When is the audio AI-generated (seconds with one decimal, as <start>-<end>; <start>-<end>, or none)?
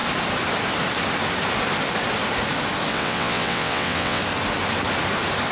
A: 2.9-4.2